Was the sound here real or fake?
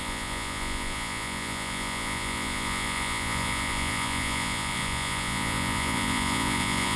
fake